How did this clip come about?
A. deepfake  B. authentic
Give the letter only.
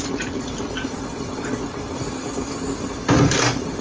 B